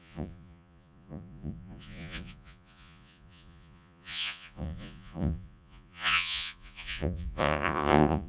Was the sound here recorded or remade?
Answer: remade